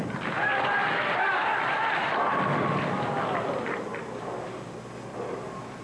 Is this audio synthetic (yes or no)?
no